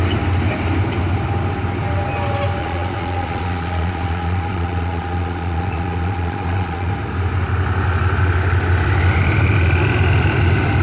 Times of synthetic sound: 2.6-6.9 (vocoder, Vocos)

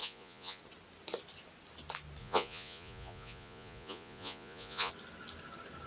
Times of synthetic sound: 0.0-0.6 (vocoder, Vocos); 2.2-4.9

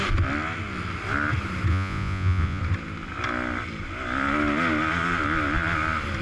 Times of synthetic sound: 1.7-2.6 (vocoder, Vocos)